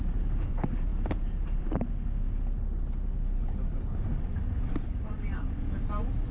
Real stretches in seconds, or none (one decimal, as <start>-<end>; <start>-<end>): 0.0-6.3

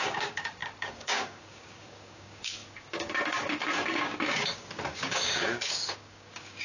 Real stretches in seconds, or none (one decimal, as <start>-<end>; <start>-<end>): none

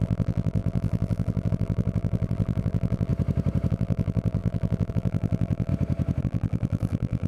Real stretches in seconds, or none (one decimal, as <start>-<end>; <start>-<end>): 3.1-3.7; 5.7-6.2

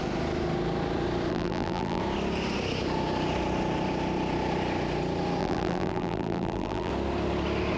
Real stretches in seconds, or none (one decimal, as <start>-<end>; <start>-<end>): 0.0-1.3; 2.0-5.4; 6.9-7.8